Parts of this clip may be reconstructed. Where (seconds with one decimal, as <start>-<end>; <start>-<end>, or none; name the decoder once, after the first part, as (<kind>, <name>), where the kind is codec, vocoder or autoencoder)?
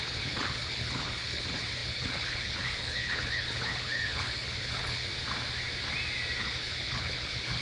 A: 0.0-5.1 (codec, HILCodec); 6.4-7.6